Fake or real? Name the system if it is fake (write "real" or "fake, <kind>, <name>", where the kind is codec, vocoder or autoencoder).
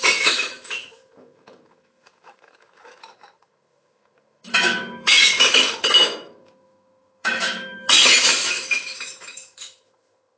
fake, autoencoder, DAC-VAE